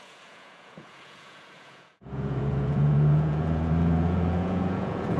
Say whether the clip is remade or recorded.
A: remade